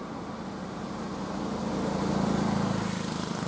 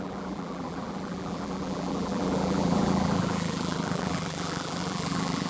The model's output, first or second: second